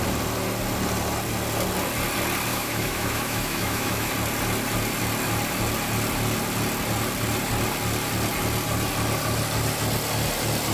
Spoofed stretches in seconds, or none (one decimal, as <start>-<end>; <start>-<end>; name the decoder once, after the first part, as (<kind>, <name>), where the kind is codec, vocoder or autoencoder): 2.5-4.1 (autoencoder, DAC-VAE)